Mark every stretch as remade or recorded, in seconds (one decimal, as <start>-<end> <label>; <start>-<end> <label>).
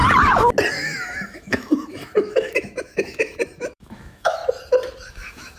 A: 0.0-0.7 recorded; 0.7-4.4 remade; 4.4-5.1 recorded; 5.1-5.6 remade